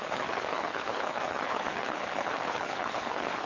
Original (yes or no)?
no